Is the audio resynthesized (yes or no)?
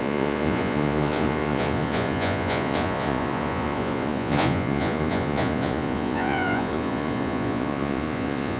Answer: yes